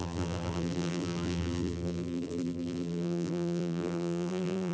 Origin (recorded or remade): remade